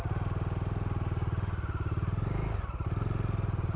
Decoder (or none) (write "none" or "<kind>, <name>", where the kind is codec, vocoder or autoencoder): none